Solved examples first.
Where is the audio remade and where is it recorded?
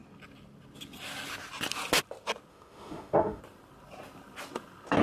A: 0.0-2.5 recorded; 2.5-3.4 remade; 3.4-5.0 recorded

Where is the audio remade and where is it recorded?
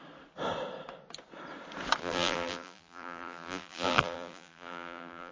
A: 0.0-2.0 recorded; 2.0-5.3 remade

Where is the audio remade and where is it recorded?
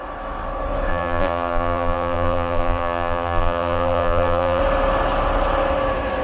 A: 0.0-0.9 recorded; 0.9-4.6 remade; 4.6-6.2 recorded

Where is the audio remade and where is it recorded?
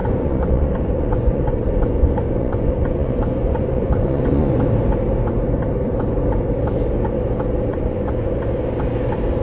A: 0.0-4.6 remade; 4.6-7.7 recorded; 7.7-8.3 remade; 8.3-9.4 recorded